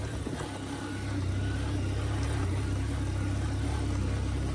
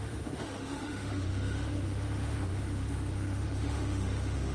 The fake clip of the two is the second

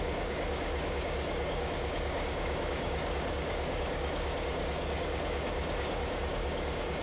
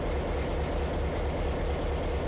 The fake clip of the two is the first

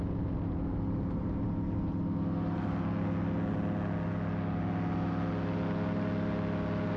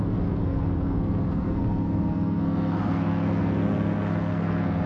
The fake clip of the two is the second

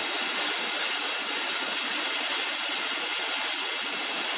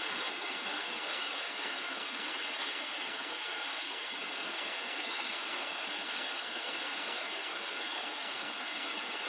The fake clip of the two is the second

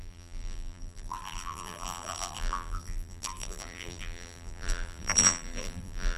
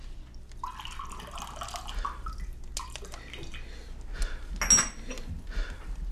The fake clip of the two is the first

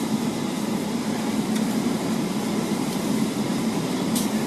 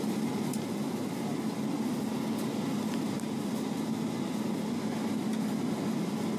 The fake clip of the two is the first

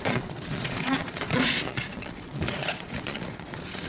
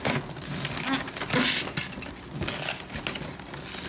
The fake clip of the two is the first